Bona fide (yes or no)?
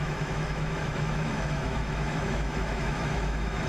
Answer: no